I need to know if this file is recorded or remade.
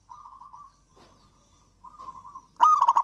recorded